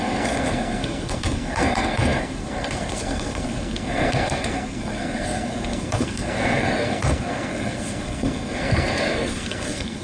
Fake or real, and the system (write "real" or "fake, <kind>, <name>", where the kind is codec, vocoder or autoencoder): fake, codec, SNAC